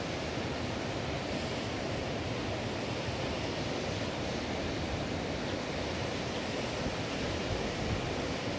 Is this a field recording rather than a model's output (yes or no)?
yes